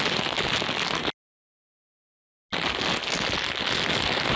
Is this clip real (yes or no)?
yes